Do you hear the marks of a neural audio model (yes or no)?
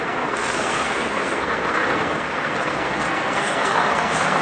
yes